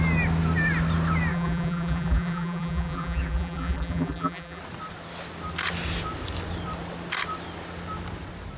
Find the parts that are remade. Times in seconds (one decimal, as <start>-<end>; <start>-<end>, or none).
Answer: 1.3-4.6